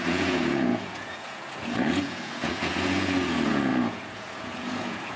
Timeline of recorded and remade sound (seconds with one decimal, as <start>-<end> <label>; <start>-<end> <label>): 0.0-5.2 remade